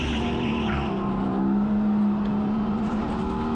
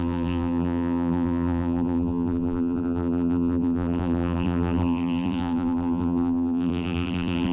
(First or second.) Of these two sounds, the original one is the first